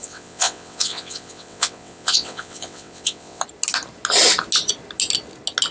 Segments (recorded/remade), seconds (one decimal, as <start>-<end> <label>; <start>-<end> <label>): 0.0-3.4 remade; 3.4-5.7 recorded